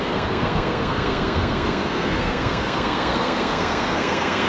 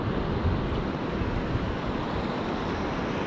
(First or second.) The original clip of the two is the second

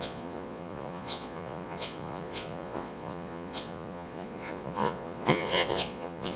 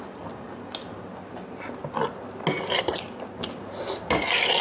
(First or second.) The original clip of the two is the second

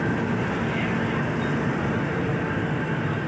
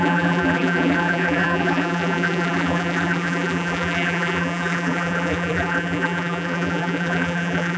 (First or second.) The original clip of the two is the first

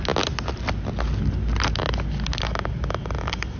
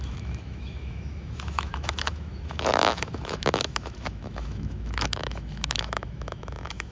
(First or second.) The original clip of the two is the first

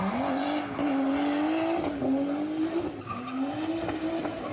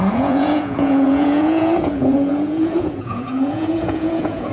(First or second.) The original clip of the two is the first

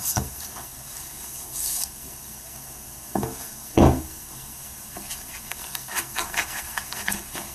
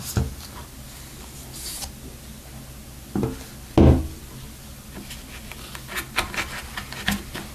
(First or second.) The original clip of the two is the second